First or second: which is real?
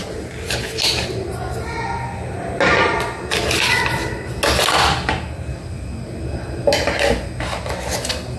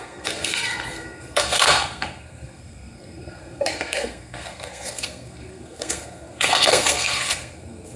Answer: first